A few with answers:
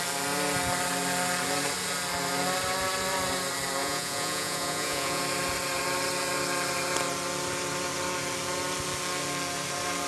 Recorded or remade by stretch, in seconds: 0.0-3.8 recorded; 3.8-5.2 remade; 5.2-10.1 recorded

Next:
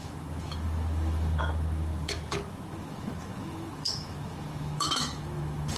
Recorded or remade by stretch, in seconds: 0.0-5.8 remade